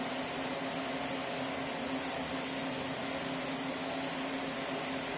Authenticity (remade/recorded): recorded